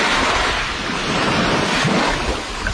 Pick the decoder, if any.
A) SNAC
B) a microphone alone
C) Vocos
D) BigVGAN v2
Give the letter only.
B